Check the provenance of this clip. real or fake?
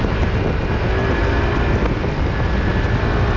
real